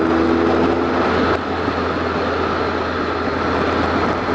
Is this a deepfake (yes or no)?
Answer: no